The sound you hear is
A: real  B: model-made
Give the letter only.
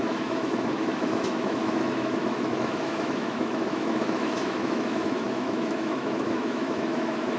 B